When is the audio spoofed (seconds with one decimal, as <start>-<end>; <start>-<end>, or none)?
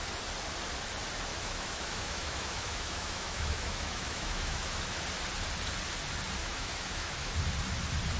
1.3-5.0; 6.4-7.3